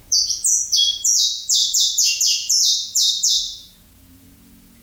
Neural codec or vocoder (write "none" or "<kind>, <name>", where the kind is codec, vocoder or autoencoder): vocoder, Vocos